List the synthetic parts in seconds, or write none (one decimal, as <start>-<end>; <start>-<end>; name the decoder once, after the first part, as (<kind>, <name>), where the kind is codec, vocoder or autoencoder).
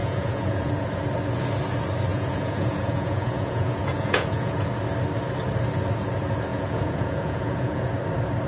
0.0-0.7 (vocoder, Vocos); 2.1-4.7; 6.5-7.9